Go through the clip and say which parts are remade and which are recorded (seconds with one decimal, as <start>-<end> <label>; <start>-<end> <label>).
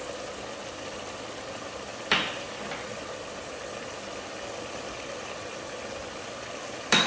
0.0-7.1 recorded